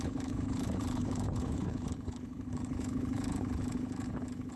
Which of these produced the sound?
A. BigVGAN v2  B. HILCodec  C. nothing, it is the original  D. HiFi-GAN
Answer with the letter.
B